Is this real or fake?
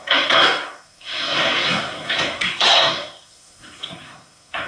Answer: fake